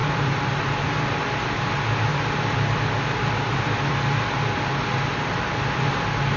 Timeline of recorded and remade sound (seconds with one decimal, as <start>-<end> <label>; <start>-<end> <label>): 0.0-1.2 remade; 1.2-2.1 recorded; 2.1-5.9 remade; 5.9-6.4 recorded